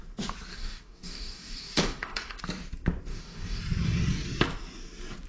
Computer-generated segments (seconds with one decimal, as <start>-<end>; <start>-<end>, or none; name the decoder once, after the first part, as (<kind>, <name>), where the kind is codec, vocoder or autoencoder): 0.5-2.4 (codec, DAC); 3.1-3.6

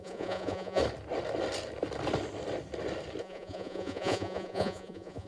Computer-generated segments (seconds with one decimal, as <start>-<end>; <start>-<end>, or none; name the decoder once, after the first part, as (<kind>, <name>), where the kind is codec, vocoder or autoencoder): 0.0-0.8 (vocoder, Vocos); 3.2-5.3

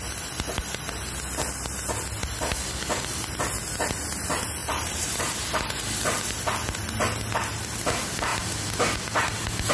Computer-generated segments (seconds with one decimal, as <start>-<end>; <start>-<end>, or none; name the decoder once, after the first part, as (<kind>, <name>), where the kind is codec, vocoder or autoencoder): 2.2-3.4 (vocoder, BigVGAN v2); 4.6-5.2

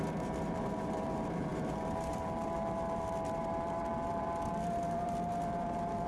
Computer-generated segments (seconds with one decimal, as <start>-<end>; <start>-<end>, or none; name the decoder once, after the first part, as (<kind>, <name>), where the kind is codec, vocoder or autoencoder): 0.0-6.1 (vocoder, BigVGAN v2)

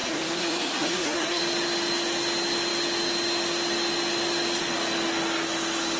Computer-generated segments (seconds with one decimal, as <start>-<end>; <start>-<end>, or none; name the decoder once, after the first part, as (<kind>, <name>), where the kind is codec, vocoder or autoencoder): 0.0-1.4 (codec, SNAC)

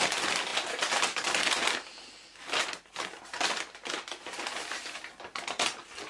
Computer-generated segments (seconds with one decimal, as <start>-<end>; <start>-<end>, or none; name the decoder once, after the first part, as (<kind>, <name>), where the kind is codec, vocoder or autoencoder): none